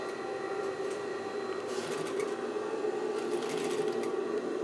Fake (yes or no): no